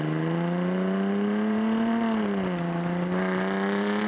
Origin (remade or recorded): remade